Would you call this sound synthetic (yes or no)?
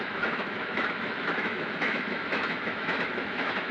yes